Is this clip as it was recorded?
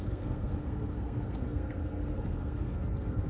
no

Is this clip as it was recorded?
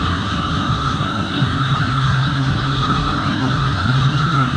no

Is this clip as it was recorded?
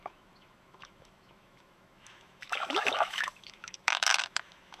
no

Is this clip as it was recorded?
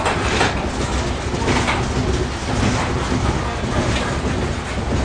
yes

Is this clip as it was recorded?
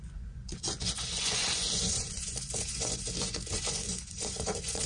no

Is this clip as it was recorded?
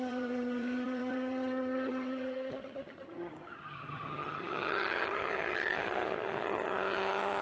no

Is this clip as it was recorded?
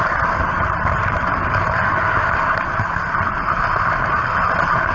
yes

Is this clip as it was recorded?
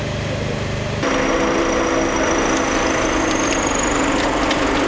yes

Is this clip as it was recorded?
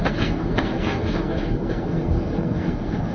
no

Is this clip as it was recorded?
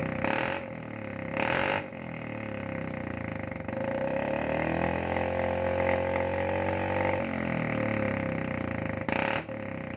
yes